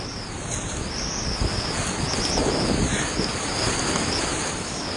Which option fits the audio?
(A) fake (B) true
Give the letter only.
B